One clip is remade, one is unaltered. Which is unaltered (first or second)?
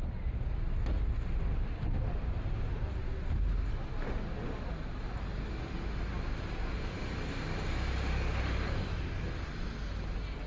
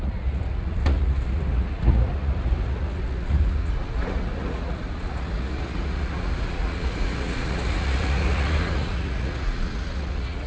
first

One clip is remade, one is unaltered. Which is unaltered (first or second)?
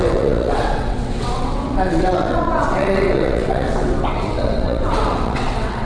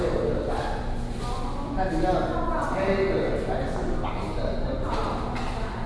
second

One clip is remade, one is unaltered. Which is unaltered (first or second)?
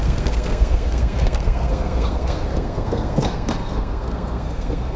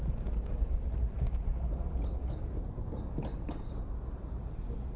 second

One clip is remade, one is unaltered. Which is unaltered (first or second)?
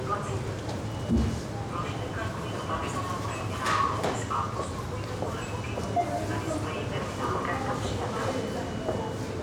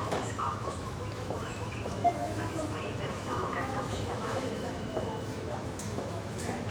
first